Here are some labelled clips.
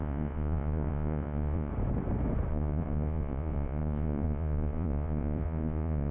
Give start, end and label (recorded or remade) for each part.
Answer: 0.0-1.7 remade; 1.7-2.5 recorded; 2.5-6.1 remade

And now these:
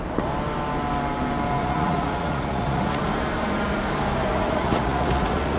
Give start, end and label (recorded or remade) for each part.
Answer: 0.0-1.6 recorded; 1.6-3.0 remade; 3.0-4.3 recorded; 4.3-5.6 remade

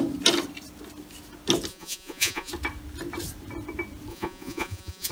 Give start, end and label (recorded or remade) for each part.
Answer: 0.0-1.7 recorded; 1.7-2.5 remade; 2.5-4.1 recorded; 4.1-5.1 remade

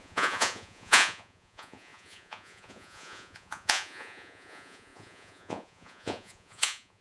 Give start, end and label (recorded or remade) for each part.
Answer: 0.0-7.0 remade

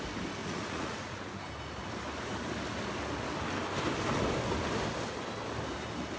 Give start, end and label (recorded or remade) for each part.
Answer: 0.0-0.4 recorded; 0.4-1.2 remade; 1.2-6.2 recorded

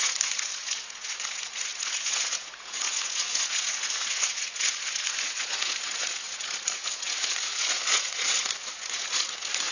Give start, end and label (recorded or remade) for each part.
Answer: 0.0-9.7 remade